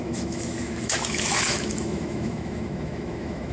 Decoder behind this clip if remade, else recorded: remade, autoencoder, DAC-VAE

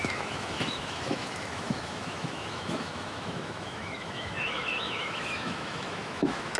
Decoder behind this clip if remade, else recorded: remade, autoencoder, DAC-VAE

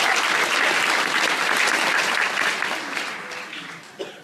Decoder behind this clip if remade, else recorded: recorded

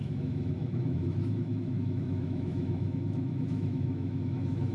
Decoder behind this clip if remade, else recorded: remade, autoencoder, DAC-VAE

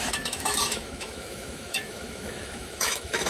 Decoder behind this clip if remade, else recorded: remade, autoencoder, DAC-VAE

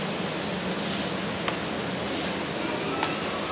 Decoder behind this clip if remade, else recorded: recorded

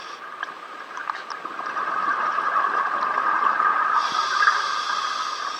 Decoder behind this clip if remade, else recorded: recorded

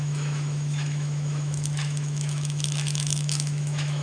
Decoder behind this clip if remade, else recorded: remade, autoencoder, DAC-VAE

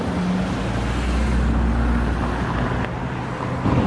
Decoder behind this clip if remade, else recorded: recorded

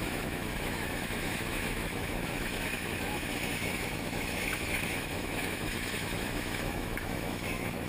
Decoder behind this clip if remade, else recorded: remade, autoencoder, DAC-VAE